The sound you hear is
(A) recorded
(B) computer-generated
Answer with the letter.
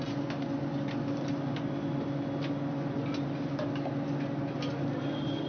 A